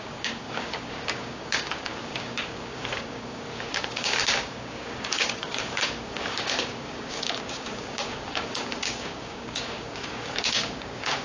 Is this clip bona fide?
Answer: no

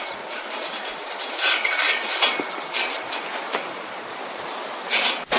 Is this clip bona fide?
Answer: yes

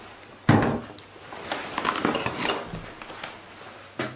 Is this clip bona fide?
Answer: yes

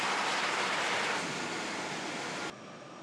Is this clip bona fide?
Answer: yes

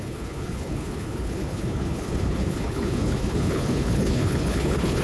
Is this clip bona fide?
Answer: no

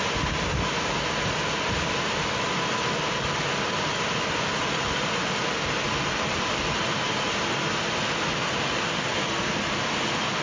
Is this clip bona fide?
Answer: yes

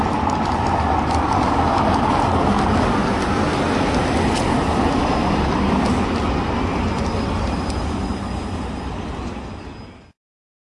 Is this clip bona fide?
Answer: yes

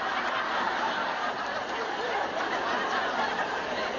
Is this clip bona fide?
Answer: yes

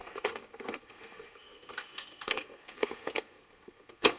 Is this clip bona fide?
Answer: no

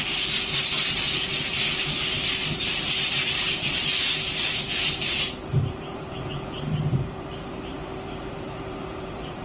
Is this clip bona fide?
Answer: no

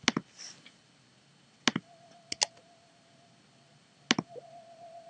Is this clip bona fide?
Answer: yes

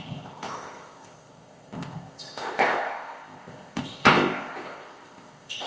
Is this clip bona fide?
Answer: no